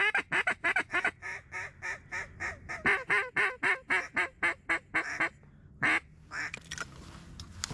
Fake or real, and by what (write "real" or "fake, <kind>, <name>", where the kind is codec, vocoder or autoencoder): real